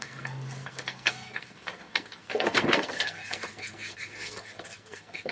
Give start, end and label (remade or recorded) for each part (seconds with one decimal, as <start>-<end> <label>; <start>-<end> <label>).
0.0-5.3 remade